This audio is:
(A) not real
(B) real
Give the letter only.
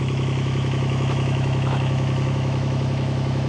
A